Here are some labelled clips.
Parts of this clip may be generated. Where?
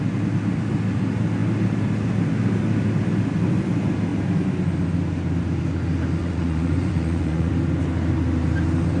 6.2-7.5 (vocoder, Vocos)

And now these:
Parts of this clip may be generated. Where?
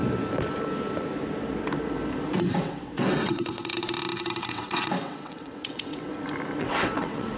2.5-3.7 (vocoder, WaveNeXt); 4.4-6.1; 6.6-7.4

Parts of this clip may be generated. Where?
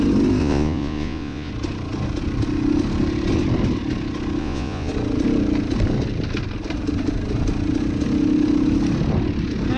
0.4-1.5 (vocoder, Vocos); 4.4-4.9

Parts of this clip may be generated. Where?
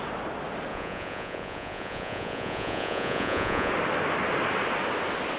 0.7-3.7 (vocoder, Vocos)